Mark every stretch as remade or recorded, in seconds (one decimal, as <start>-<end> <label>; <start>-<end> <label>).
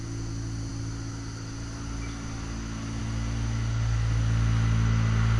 0.0-5.4 recorded